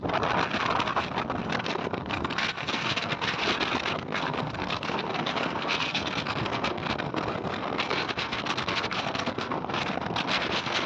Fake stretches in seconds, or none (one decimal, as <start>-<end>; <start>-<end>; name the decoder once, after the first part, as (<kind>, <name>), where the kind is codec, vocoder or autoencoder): 1.6-3.4 (codec, SNAC); 3.9-10.9